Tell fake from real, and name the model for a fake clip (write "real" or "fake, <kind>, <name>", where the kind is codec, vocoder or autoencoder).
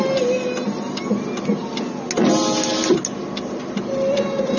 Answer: real